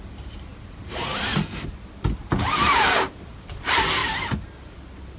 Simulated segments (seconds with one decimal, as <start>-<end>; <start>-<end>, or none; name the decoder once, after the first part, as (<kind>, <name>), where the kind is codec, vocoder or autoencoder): none